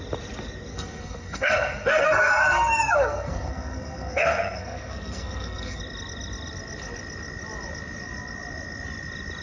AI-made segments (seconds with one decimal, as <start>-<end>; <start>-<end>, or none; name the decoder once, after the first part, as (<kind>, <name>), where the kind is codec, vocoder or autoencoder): 0.7-5.8 (codec, SNAC)